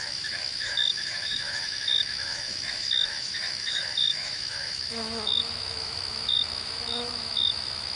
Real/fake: fake